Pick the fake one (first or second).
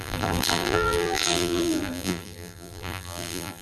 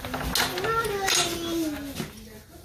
first